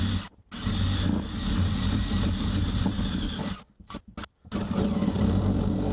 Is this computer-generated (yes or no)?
no